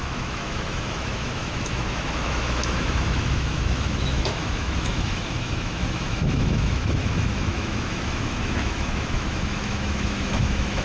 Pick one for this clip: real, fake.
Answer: fake